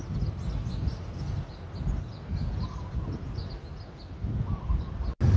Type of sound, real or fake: real